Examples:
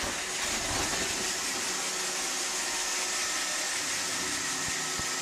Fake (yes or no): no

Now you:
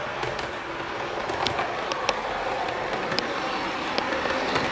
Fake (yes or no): no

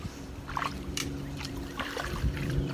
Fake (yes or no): yes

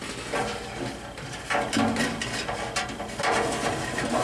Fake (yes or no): no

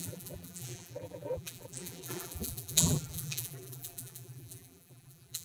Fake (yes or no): yes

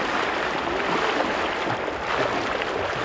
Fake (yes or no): yes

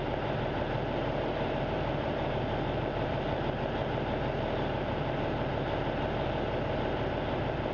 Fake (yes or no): yes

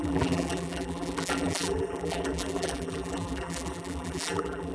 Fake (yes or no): yes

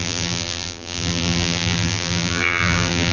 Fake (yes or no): yes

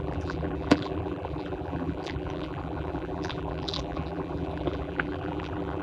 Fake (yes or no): yes